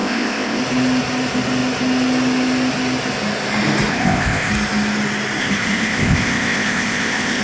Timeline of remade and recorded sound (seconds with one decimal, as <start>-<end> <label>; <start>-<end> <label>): 0.0-0.6 remade; 0.6-3.9 recorded; 3.9-4.5 remade; 4.5-5.4 recorded; 5.4-7.4 remade